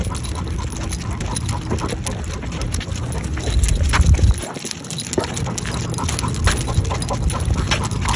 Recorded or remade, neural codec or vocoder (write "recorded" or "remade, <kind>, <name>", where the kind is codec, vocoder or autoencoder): recorded